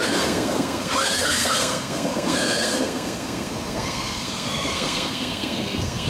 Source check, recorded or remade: remade